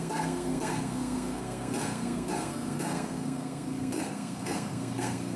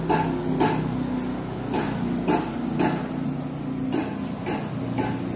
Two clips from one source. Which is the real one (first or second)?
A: second